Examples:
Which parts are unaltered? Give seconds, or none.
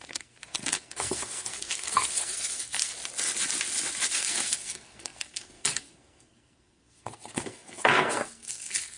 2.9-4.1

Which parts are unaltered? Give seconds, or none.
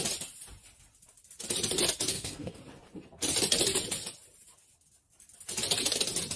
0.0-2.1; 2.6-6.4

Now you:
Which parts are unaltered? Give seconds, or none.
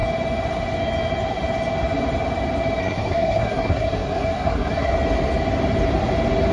0.0-2.8; 4.9-6.5